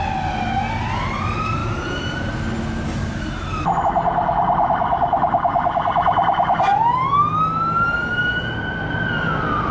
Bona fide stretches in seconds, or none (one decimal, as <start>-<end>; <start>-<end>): 0.0-4.9; 6.7-9.7